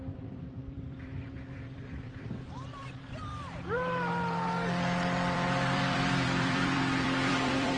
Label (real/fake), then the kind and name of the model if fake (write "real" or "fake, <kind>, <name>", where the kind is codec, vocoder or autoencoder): fake, vocoder, BigVGAN v2